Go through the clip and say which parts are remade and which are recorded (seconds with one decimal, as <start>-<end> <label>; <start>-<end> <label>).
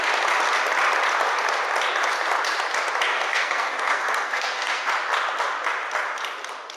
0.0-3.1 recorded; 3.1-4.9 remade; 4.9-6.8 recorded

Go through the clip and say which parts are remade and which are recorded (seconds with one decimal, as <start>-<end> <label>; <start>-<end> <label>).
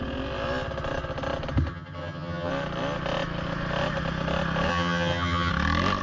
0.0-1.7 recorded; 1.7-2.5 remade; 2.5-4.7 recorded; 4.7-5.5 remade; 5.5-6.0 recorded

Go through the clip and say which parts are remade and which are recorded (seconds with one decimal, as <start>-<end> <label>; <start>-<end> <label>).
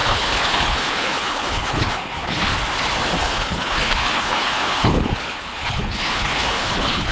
0.0-2.5 remade; 2.5-3.2 recorded; 3.2-7.1 remade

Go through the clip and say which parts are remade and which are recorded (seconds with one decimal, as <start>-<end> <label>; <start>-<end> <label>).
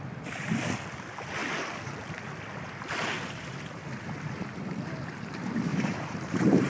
0.0-5.7 recorded; 5.7-6.7 remade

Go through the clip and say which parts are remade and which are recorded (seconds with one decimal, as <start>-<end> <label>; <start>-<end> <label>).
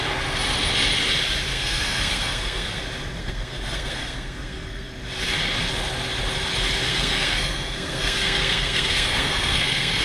0.0-1.5 recorded; 1.5-2.8 remade; 2.8-3.2 recorded; 3.2-4.9 remade; 4.9-6.9 recorded; 6.9-10.0 remade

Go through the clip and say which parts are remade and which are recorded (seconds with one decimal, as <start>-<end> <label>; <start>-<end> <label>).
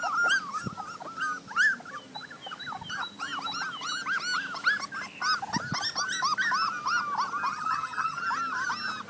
0.0-7.5 recorded; 7.5-8.2 remade; 8.2-9.1 recorded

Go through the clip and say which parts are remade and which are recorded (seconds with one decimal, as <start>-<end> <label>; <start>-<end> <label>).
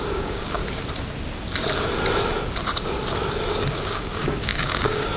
0.0-0.6 remade; 0.6-3.7 recorded; 3.7-5.2 remade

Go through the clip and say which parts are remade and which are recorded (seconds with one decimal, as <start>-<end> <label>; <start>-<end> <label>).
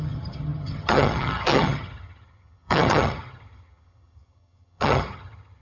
0.0-5.6 remade